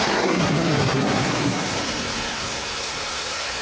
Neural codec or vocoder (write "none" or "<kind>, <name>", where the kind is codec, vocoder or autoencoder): codec, SNAC